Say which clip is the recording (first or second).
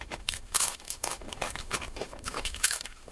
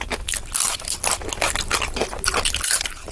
second